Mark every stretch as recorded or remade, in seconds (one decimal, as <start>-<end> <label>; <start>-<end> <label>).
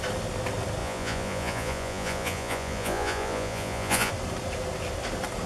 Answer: 0.0-0.8 recorded; 0.8-4.1 remade; 4.1-5.5 recorded